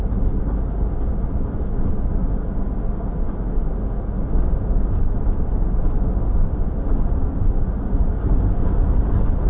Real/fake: real